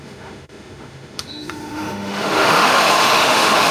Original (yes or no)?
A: no